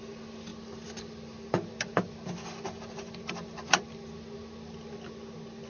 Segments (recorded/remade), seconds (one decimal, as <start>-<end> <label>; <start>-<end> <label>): 0.0-5.7 recorded